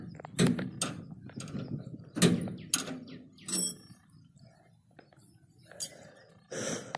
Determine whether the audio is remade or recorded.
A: recorded